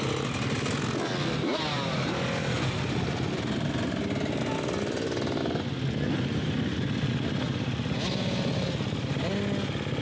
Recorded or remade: recorded